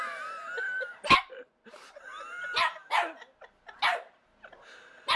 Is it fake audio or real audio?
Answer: real